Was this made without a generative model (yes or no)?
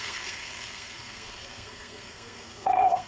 no